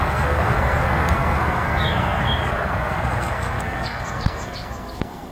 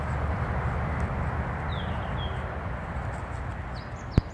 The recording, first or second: second